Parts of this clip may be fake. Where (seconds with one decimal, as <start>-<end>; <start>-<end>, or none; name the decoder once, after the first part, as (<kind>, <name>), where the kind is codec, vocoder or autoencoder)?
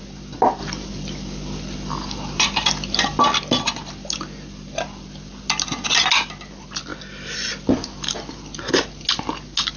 none